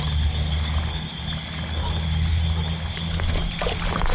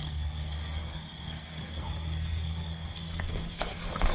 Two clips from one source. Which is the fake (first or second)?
second